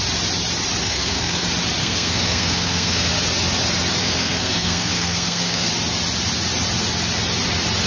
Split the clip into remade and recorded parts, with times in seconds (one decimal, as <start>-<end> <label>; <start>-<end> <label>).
0.0-0.8 recorded; 0.8-1.4 remade; 1.4-1.8 recorded; 1.8-3.1 remade; 3.1-4.0 recorded; 4.0-5.7 remade; 5.7-7.9 recorded

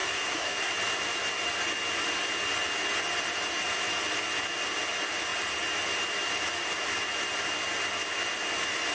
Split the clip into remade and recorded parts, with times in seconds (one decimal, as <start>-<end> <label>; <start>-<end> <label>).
0.0-0.7 remade; 0.7-8.9 recorded

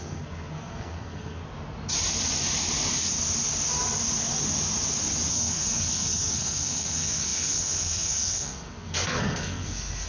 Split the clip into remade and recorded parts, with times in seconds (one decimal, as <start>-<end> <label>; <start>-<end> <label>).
0.0-1.4 remade; 1.4-5.3 recorded; 5.3-10.1 remade